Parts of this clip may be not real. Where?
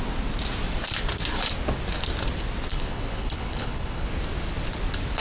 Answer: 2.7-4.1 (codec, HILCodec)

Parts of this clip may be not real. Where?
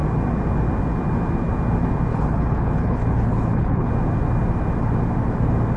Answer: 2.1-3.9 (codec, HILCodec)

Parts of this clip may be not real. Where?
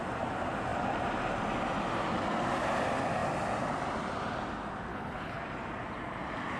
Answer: 4.9-5.4 (codec, HILCodec)